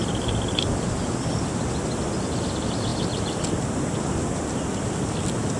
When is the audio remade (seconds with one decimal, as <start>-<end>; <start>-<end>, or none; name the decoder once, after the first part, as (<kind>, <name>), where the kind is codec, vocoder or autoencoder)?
none